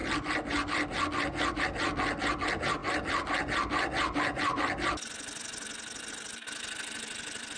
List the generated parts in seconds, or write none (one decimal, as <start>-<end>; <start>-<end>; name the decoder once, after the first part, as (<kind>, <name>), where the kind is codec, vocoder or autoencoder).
none

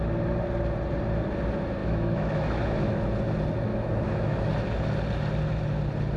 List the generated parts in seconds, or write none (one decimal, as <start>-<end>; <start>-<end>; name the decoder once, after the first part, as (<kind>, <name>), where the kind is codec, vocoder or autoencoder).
1.8-3.0 (autoencoder, DAC-VAE); 3.7-4.5